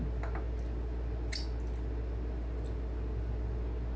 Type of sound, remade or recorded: recorded